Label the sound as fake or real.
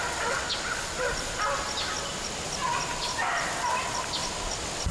real